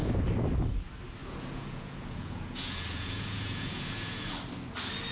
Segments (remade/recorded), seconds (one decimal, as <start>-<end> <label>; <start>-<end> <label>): 0.0-1.2 recorded; 1.2-4.3 remade; 4.3-5.1 recorded